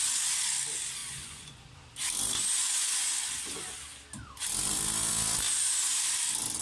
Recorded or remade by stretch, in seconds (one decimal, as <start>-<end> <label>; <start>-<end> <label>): 0.0-1.0 recorded; 1.0-1.6 remade; 1.6-2.6 recorded; 2.6-3.1 remade; 3.1-6.6 recorded